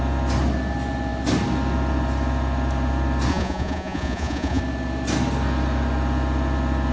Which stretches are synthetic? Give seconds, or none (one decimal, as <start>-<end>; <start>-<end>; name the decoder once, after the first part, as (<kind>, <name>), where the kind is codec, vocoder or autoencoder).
3.3-4.6 (vocoder, Vocos)